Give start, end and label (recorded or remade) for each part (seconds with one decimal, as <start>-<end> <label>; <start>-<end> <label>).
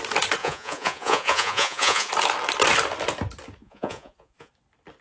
0.0-0.4 recorded; 0.4-2.1 remade; 2.1-3.6 recorded; 3.6-4.5 remade; 4.5-5.0 recorded